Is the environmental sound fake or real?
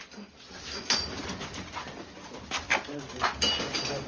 real